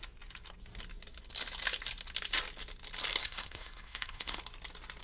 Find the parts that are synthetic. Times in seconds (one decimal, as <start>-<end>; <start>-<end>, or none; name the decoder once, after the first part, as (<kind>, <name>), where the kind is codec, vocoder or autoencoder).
3.2-4.4 (codec, SNAC)